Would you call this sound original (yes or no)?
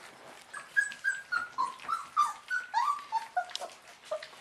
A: yes